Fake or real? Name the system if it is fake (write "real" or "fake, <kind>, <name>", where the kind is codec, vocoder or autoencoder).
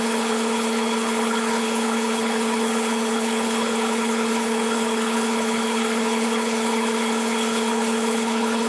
fake, codec, HILCodec